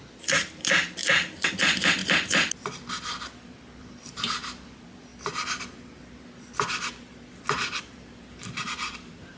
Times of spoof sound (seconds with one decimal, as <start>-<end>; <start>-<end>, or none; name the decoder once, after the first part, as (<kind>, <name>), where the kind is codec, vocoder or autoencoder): 0.0-2.0 (vocoder, BigVGAN v2); 3.8-5.1; 7.8-9.4